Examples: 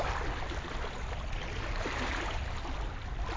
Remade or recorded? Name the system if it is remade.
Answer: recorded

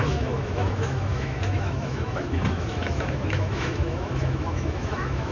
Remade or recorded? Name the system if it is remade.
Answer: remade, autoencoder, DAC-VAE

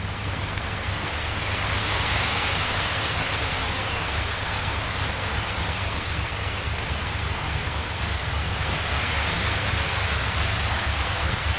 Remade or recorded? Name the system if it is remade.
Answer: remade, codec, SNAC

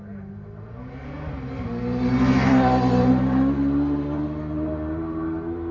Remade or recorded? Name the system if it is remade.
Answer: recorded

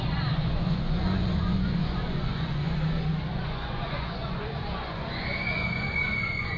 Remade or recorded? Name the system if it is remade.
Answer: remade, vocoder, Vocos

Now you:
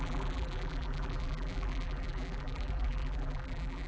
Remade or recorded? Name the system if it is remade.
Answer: remade, vocoder, BigVGAN v2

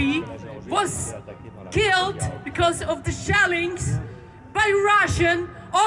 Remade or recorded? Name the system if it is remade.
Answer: recorded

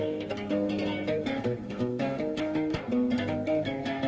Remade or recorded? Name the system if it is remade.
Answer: remade, codec, SNAC